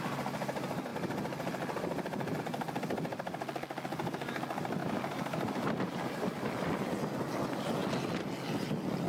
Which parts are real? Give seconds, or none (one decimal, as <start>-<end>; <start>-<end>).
0.0-4.8; 6.9-9.1